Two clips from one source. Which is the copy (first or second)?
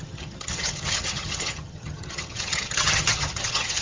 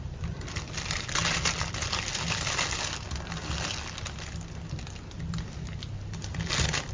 first